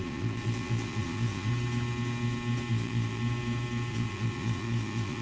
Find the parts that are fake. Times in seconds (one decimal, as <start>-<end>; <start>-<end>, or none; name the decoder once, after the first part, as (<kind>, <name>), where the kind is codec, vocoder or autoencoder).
0.0-1.5 (vocoder, Vocos); 2.7-3.2; 3.9-5.2